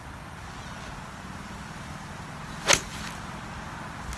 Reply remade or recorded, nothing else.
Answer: recorded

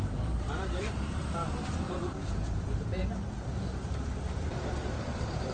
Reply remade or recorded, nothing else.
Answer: remade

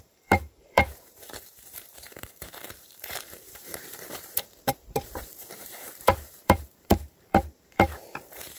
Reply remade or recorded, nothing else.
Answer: remade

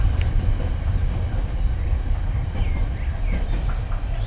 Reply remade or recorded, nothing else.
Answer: remade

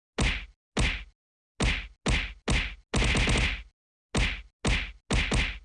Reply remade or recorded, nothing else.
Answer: recorded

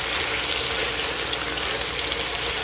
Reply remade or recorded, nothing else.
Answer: recorded